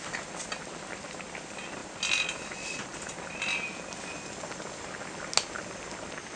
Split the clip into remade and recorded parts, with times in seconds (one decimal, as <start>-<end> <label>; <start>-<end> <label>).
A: 0.0-1.8 remade; 1.8-2.4 recorded; 2.4-2.9 remade; 2.9-6.4 recorded